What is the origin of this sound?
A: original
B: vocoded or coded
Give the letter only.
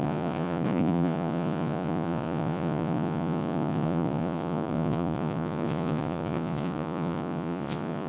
B